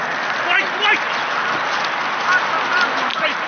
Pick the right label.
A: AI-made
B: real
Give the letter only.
B